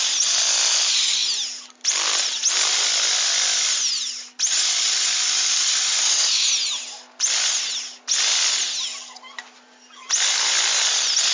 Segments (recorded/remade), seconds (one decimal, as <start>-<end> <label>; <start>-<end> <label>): 0.0-11.3 recorded